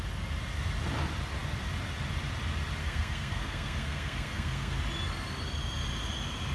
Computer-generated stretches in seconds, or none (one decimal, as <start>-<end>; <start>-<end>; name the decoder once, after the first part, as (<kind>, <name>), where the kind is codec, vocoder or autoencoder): 2.8-4.8 (codec, SNAC)